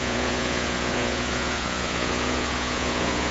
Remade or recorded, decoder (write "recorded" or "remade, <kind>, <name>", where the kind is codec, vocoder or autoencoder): remade, vocoder, Vocos